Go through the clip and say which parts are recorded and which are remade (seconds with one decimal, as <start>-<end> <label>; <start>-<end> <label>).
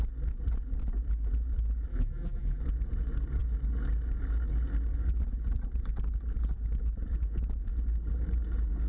0.0-1.9 recorded; 1.9-2.6 remade; 2.6-8.9 recorded